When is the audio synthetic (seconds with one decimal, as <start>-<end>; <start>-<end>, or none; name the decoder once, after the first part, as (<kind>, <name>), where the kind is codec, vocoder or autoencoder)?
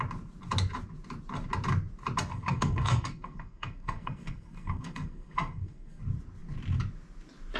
2.3-6.0 (codec, SNAC)